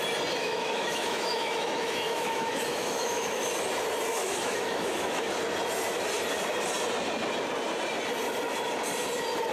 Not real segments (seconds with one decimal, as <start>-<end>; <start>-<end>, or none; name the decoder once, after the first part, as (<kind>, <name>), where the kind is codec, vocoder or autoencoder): 0.4-3.5 (autoencoder, DAC-VAE); 4.1-5.3